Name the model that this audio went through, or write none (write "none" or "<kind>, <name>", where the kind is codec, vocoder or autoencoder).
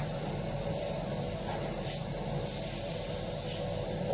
none